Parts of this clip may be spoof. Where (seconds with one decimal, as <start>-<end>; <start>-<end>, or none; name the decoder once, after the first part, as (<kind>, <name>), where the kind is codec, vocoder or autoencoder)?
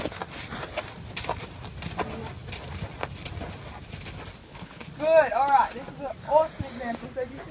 4.4-4.9 (codec, HILCodec)